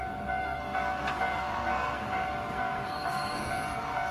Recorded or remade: remade